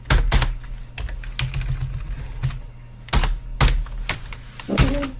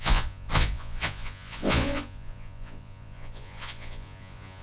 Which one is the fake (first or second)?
second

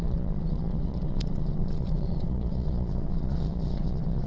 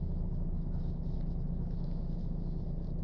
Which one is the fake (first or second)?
first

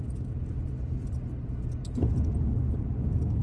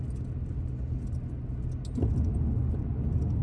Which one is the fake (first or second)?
first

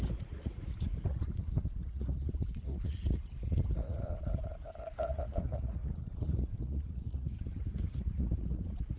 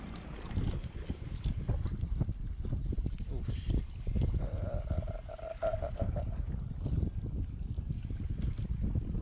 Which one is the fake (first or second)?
first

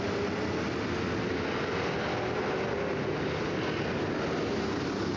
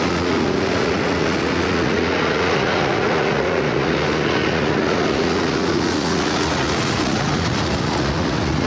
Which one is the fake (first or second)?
second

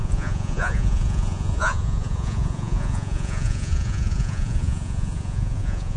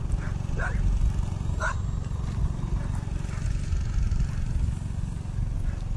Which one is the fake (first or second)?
first